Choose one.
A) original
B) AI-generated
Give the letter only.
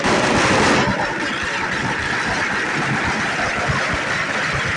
A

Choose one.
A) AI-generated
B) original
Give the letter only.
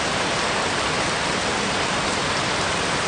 B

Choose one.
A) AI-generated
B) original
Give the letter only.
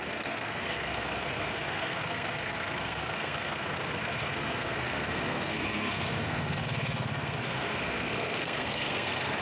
A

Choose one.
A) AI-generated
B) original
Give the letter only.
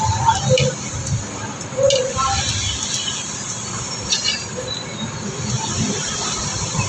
B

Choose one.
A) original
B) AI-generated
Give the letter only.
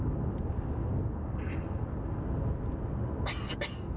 A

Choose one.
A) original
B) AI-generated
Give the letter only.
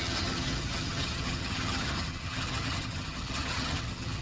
B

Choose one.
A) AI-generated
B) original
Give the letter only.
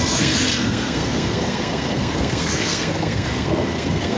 A